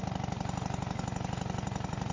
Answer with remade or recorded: recorded